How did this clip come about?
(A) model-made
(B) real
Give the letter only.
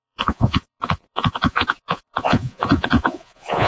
A